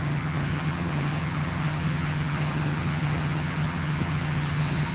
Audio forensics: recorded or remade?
remade